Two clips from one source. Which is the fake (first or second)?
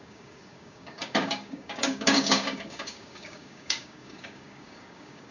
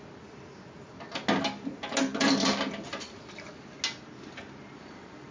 first